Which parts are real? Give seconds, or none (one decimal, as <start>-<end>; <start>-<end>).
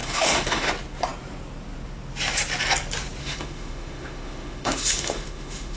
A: 0.7-3.2